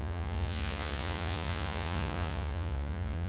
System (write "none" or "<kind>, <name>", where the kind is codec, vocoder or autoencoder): vocoder, Vocos